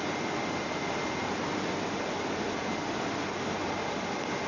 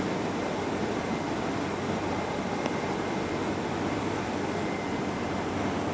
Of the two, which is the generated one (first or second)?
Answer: second